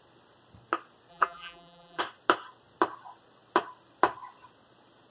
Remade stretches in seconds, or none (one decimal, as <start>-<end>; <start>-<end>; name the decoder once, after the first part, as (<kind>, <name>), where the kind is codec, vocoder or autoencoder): 1.1-2.0 (vocoder, BigVGAN v2)